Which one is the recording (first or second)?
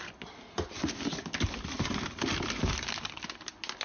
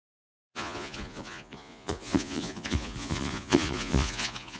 first